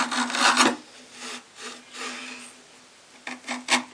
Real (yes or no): yes